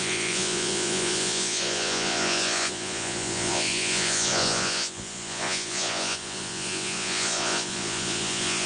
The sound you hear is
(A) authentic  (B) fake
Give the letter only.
B